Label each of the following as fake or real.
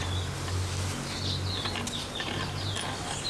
real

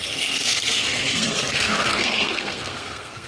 fake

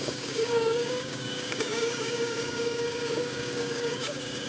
fake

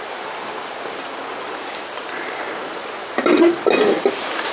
real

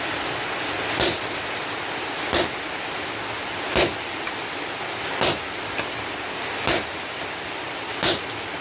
real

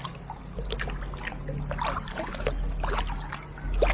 real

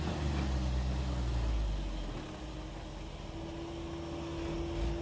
real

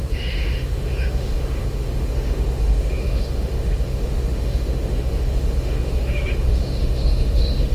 fake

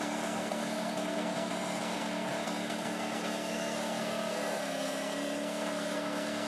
fake